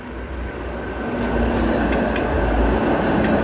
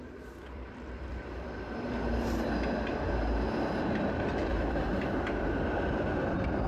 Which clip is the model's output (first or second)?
second